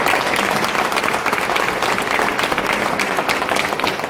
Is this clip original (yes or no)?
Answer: yes